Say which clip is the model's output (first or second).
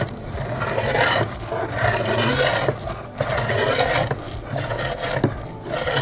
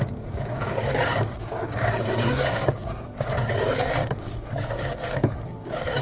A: second